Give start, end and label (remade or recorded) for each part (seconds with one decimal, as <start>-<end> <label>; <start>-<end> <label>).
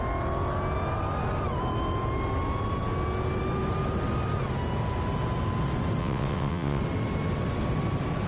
0.0-6.0 recorded; 6.0-6.8 remade; 6.8-8.3 recorded